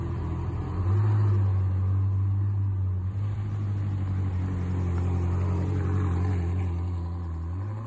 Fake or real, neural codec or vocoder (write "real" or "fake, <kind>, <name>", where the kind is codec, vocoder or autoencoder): real